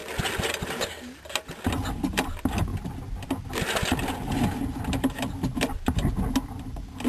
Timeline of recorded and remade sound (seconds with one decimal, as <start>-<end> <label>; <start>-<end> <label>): 0.0-7.1 recorded